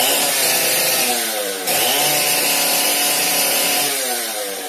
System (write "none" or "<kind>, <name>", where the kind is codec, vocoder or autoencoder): vocoder, BigVGAN v2